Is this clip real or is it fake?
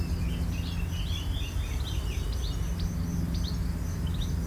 real